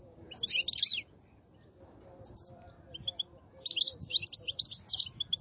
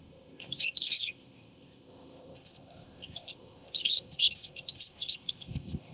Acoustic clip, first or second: first